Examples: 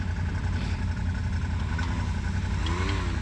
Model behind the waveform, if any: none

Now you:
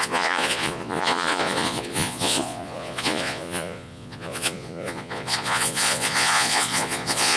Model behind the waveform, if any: vocoder, Vocos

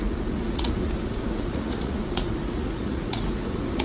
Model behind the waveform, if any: vocoder, Vocos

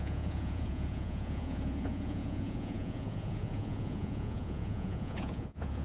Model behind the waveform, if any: vocoder, Vocos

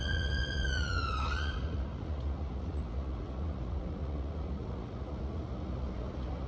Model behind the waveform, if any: vocoder, Vocos